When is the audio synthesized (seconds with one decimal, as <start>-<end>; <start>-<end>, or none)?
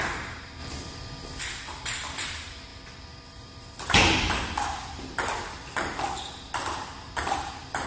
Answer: none